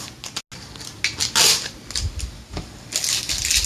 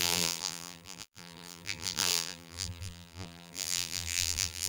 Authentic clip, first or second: first